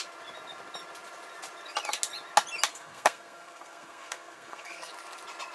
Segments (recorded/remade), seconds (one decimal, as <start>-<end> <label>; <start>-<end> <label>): 0.0-2.7 recorded; 2.7-4.9 remade; 4.9-5.5 recorded